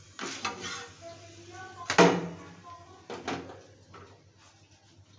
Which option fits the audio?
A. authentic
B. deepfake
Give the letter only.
A